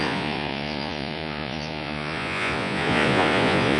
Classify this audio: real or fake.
fake